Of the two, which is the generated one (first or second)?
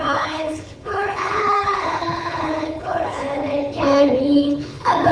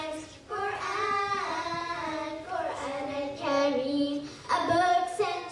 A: first